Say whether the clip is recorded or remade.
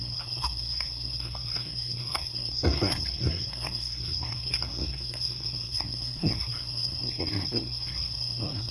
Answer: remade